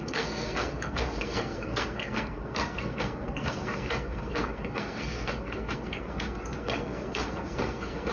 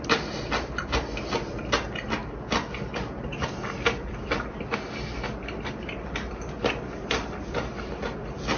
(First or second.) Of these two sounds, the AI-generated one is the first